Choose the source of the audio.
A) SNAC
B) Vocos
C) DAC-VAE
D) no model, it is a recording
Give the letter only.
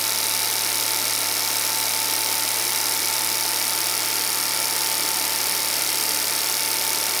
D